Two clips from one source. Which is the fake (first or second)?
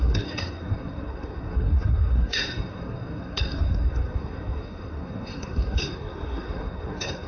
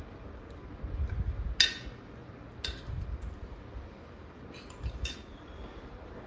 first